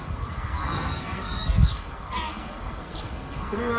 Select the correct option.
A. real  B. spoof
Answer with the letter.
B